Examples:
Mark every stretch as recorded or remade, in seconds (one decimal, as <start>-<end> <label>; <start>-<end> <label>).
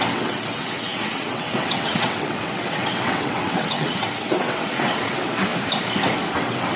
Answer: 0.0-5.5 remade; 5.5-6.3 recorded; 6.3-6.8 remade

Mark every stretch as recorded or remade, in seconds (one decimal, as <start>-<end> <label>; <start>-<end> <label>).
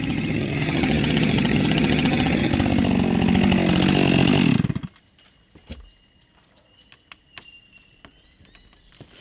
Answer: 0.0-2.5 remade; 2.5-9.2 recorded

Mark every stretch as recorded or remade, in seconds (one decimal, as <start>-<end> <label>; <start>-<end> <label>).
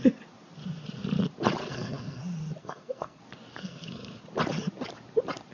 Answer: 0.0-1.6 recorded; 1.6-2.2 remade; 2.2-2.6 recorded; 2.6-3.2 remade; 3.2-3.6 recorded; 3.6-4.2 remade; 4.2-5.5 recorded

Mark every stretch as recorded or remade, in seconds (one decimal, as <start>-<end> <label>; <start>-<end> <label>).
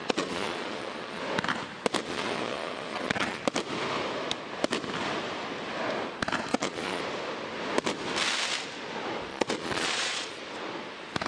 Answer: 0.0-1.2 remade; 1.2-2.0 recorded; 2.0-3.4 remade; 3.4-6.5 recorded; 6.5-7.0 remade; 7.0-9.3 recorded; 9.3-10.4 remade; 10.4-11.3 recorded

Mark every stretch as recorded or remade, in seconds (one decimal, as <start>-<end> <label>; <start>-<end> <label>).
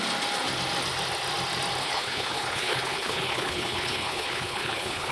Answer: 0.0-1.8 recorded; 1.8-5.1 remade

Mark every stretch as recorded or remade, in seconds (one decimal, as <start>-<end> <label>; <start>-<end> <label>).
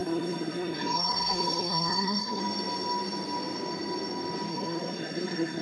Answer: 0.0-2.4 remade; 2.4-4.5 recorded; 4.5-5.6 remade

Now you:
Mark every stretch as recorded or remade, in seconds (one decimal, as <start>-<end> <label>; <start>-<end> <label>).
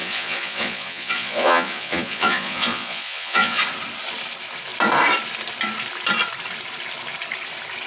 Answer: 0.0-3.6 remade; 3.6-7.9 recorded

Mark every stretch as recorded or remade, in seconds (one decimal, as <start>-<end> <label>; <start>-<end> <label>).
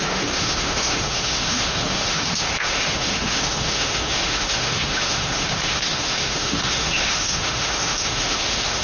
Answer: 0.0-8.8 remade